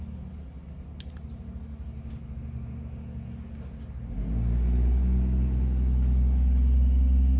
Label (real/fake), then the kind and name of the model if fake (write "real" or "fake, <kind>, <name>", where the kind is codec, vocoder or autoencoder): real